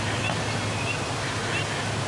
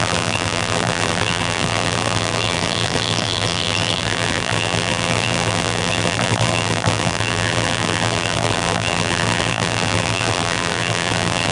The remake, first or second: second